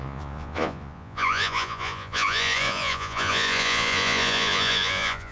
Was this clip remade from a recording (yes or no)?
yes